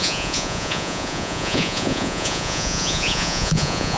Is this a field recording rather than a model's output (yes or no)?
no